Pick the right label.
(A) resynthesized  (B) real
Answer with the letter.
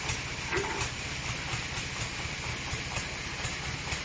B